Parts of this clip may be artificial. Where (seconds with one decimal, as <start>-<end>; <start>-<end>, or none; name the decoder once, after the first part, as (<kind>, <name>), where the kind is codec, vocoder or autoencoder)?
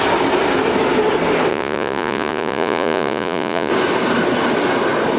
1.5-3.7 (vocoder, Vocos)